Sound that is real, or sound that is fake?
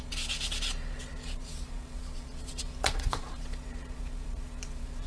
fake